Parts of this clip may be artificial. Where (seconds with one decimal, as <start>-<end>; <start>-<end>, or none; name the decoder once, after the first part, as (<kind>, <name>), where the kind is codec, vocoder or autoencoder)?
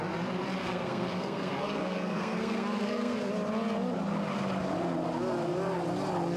0.6-3.3 (codec, SNAC)